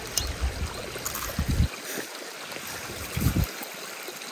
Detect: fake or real real